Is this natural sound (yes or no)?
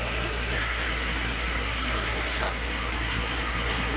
no